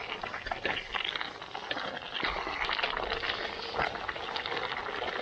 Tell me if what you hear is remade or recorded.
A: recorded